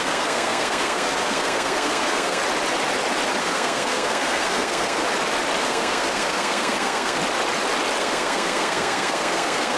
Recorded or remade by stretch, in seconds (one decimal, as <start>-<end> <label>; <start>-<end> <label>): 0.0-2.4 remade; 2.4-3.4 recorded; 3.4-5.0 remade; 5.0-5.6 recorded; 5.6-7.2 remade; 7.2-8.0 recorded; 8.0-9.8 remade